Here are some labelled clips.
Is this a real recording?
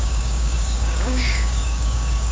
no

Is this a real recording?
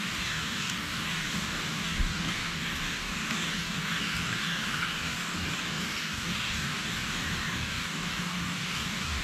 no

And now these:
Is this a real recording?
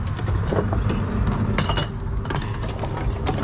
yes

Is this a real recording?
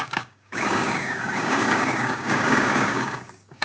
no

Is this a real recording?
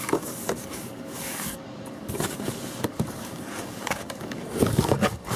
no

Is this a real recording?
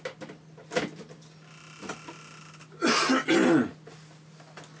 yes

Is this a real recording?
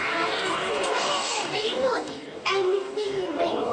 no